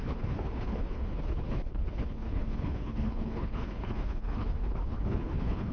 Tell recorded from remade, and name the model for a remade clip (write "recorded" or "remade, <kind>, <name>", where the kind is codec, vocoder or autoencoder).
remade, codec, HILCodec